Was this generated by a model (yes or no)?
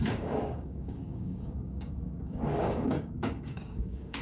yes